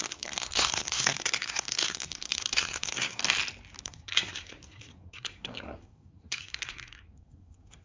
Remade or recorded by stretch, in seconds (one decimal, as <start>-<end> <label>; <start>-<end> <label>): 0.0-3.2 remade; 3.2-3.8 recorded; 3.8-7.8 remade